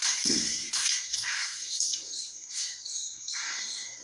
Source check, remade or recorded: remade